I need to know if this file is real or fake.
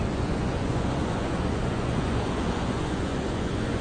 fake